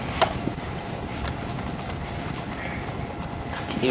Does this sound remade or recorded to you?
recorded